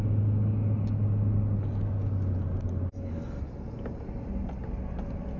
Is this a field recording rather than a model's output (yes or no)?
yes